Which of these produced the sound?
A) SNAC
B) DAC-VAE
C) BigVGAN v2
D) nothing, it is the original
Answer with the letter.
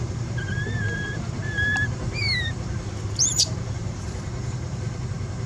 C